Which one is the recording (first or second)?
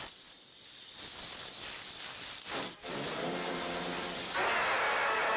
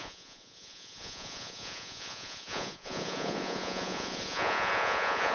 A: first